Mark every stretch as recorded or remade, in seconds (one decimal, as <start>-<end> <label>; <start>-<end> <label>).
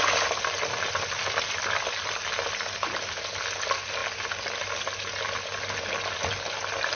0.0-7.0 recorded